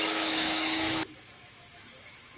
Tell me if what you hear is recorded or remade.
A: remade